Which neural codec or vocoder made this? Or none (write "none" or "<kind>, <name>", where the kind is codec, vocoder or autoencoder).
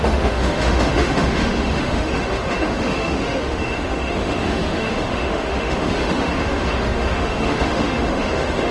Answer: autoencoder, DAC-VAE